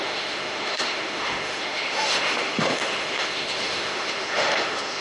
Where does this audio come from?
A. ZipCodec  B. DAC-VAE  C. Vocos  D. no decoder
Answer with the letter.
B